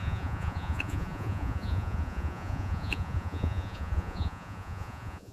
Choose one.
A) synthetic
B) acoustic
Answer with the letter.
A